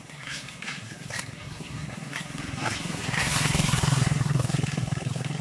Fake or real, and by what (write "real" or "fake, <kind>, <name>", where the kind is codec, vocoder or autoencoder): fake, codec, SNAC